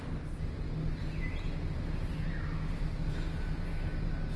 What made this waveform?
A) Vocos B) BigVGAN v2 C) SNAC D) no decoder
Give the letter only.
D